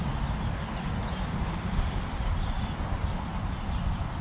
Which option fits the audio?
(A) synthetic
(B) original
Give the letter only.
B